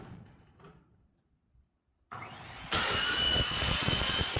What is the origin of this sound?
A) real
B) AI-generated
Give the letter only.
B